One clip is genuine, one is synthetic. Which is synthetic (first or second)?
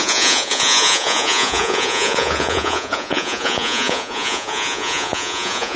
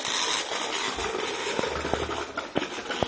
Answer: first